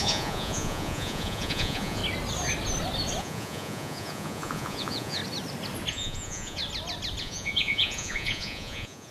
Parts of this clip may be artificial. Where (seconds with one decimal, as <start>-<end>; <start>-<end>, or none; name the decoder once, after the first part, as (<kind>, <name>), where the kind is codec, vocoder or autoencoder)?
0.0-2.0 (vocoder, Vocos); 3.2-5.2; 5.9-6.6; 7.2-9.1